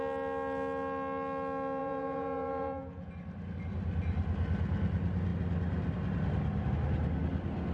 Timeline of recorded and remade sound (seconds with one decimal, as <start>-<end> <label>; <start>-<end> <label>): 0.0-1.8 recorded; 1.8-3.1 remade; 3.1-7.7 recorded